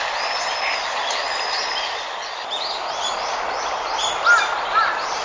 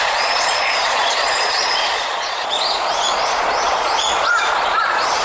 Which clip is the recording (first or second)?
first